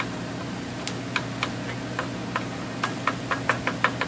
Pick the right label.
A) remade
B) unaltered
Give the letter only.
B